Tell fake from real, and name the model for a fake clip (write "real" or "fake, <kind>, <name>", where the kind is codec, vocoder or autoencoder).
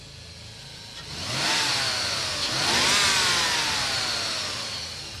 real